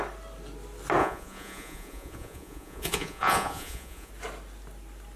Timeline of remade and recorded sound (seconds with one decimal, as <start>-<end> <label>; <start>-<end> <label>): 0.0-1.0 recorded; 1.0-4.1 remade; 4.1-5.2 recorded